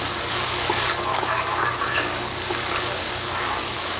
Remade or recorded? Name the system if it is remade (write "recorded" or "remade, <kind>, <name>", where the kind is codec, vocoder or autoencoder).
remade, codec, DAC